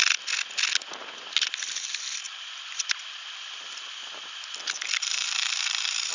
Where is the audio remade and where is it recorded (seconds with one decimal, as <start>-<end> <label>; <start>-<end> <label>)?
0.0-1.6 recorded; 1.6-2.2 remade; 2.2-5.0 recorded; 5.0-6.1 remade